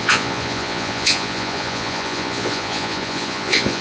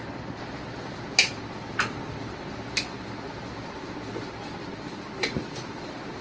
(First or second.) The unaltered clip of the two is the second